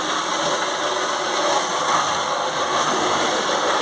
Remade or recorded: recorded